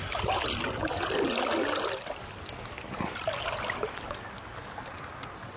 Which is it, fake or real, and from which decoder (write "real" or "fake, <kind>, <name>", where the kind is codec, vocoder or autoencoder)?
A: real